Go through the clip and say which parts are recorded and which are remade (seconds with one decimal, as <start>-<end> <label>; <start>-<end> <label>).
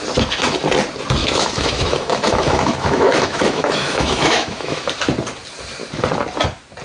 0.0-1.2 recorded; 1.2-4.9 remade; 4.9-6.8 recorded